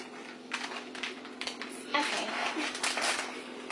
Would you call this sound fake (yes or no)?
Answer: yes